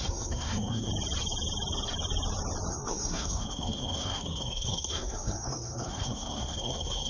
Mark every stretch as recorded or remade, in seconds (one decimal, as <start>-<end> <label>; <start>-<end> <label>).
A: 0.0-0.9 remade; 0.9-2.7 recorded; 2.7-7.1 remade